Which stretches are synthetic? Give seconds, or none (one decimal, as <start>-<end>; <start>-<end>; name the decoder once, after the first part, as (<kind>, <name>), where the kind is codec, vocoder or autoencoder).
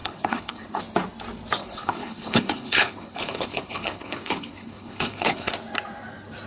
0.0-0.8 (codec, HILCodec); 1.6-5.5